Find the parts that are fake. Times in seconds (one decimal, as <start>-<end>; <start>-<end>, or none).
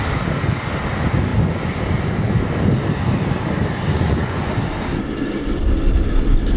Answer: 3.9-4.5